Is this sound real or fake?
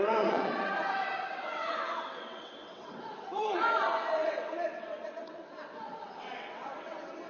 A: fake